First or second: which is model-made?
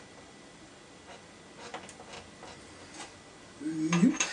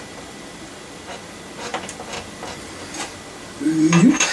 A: second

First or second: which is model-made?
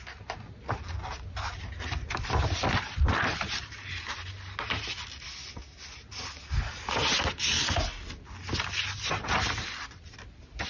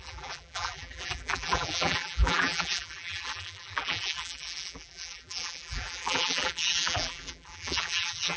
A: second